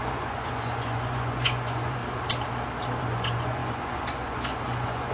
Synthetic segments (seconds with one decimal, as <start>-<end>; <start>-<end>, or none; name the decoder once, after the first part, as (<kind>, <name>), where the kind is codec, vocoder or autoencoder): 0.0-2.0 (vocoder, Vocos); 3.0-5.1